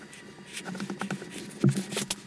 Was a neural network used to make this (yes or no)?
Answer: no